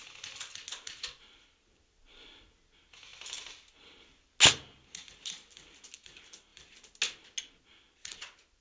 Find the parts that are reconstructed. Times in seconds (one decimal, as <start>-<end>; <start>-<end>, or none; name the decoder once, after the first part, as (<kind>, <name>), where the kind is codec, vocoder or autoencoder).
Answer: none